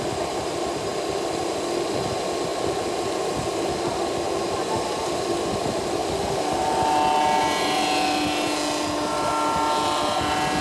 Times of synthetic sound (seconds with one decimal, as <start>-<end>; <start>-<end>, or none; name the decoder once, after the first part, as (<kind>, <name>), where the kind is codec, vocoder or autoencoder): none